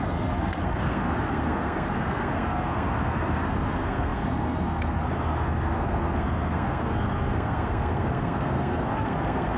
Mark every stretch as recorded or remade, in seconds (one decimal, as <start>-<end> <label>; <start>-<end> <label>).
0.0-9.6 remade